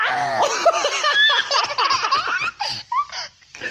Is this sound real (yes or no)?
yes